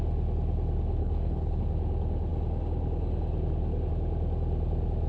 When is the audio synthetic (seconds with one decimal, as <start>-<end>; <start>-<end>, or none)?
1.0-1.6